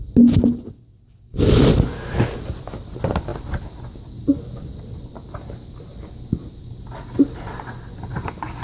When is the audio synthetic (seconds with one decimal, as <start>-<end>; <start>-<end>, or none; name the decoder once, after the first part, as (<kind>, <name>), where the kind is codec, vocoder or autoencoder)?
none